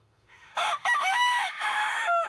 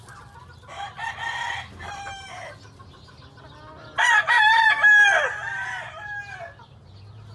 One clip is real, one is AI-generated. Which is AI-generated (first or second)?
first